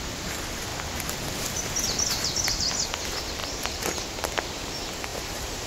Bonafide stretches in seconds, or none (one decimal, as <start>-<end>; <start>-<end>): 0.0-3.4; 4.0-5.1